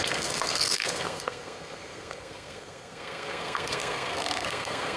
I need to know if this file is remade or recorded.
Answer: remade